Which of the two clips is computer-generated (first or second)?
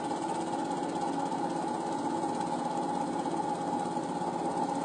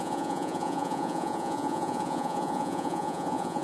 second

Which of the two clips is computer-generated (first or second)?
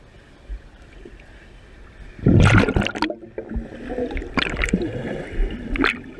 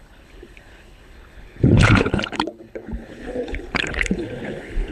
second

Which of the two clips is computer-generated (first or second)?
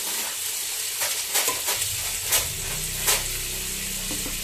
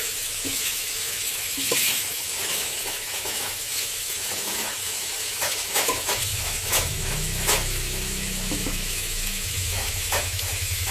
second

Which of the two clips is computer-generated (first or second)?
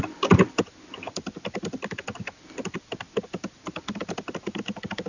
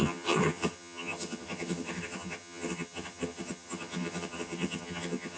second